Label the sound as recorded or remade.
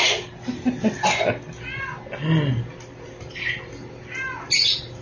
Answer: recorded